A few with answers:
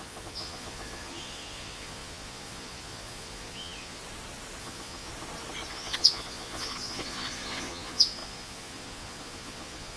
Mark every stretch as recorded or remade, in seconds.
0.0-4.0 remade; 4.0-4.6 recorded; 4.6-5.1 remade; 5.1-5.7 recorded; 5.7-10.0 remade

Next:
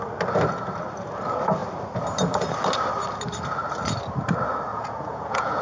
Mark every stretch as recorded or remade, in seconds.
0.0-4.7 recorded; 4.7-5.6 remade

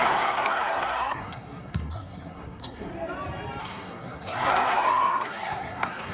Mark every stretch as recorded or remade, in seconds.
0.0-2.9 remade; 2.9-3.6 recorded; 3.6-6.1 remade

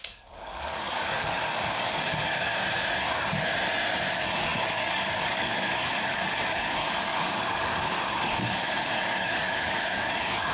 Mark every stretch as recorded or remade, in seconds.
0.0-2.5 remade; 2.5-4.1 recorded; 4.1-10.5 remade